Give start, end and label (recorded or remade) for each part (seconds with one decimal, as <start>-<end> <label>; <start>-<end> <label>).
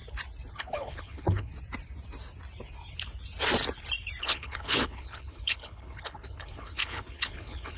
0.0-0.5 recorded; 0.5-1.5 remade; 1.5-4.2 recorded; 4.2-7.8 remade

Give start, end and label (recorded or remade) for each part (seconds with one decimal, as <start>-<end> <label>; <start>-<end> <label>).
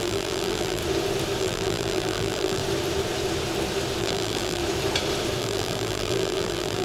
0.0-0.8 remade; 0.8-1.4 recorded; 1.4-2.6 remade; 2.6-4.0 recorded; 4.0-4.6 remade; 4.6-5.4 recorded; 5.4-6.8 remade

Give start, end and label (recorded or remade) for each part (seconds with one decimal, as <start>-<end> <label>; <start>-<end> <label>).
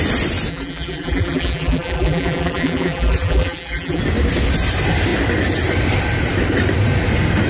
0.0-0.5 recorded; 0.5-4.0 remade; 4.0-7.5 recorded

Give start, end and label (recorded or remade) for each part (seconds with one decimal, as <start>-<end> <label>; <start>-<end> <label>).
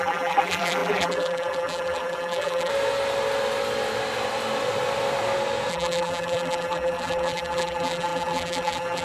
0.0-2.7 remade; 2.7-5.7 recorded; 5.7-9.0 remade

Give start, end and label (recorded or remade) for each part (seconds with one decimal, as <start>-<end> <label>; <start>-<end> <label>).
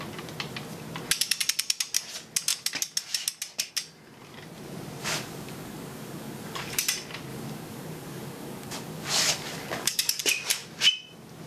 0.0-5.0 recorded; 5.0-6.8 remade; 6.8-7.3 recorded; 7.3-10.2 remade; 10.2-11.5 recorded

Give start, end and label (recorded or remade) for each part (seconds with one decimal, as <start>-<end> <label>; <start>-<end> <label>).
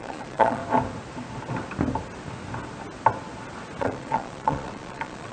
0.0-0.6 remade; 0.6-3.8 recorded; 3.8-5.3 remade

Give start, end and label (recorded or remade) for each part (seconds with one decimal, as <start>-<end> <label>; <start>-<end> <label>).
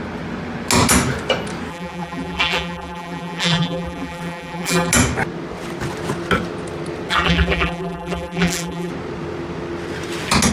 0.0-1.7 recorded; 1.7-4.9 remade; 4.9-7.1 recorded; 7.1-8.9 remade; 8.9-10.5 recorded